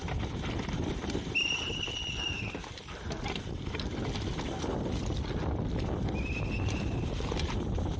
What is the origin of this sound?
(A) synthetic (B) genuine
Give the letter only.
B